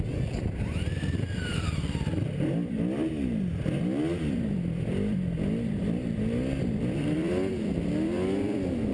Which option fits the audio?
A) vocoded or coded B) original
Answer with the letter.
A